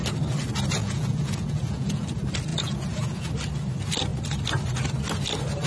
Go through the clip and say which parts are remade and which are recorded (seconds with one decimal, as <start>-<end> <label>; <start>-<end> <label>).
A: 0.0-0.8 recorded; 0.8-2.1 remade; 2.1-2.5 recorded; 2.5-3.3 remade; 3.3-5.7 recorded